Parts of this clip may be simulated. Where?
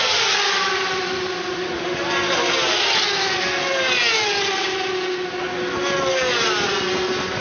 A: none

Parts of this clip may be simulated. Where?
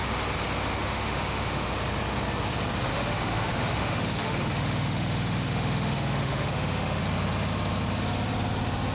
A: 0.8-1.7; 2.9-7.0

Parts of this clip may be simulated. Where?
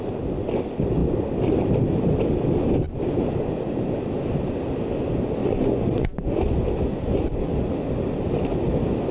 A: 5.4-6.4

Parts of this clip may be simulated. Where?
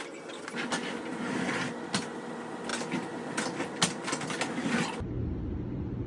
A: none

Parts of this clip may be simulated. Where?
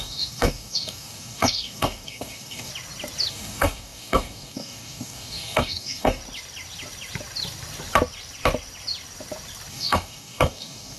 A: 0.0-2.7; 3.3-6.2; 9.7-11.0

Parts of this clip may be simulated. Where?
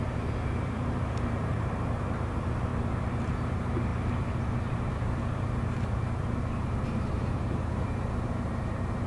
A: 0.0-2.7; 3.3-3.9; 4.6-9.1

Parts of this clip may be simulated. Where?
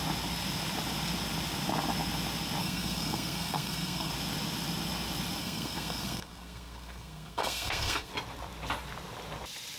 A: 2.6-4.1; 5.4-8.1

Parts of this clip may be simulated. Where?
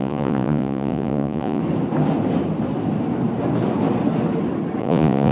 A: 0.0-1.6; 4.8-5.3